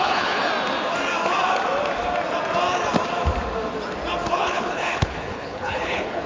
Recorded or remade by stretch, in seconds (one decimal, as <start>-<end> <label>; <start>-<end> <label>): 0.0-0.5 remade; 0.5-4.3 recorded; 4.3-6.3 remade